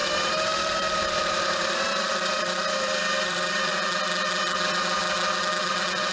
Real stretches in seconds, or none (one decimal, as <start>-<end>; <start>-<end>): 3.7-6.1